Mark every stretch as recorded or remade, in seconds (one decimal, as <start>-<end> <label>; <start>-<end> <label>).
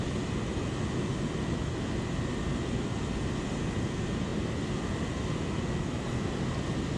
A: 0.0-7.0 recorded